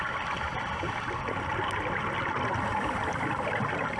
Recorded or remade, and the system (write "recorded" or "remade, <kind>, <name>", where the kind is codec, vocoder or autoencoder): recorded